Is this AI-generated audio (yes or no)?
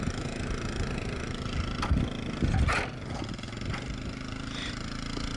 no